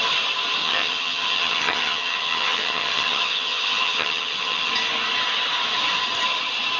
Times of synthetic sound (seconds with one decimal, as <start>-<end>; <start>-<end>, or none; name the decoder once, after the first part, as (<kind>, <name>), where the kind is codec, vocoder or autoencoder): 0.6-4.7 (vocoder, HiFi-GAN)